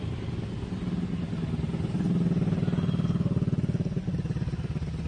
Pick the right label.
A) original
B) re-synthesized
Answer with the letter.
A